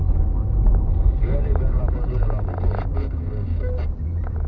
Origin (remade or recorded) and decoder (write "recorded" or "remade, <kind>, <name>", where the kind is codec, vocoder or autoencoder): recorded